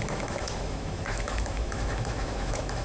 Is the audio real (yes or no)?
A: no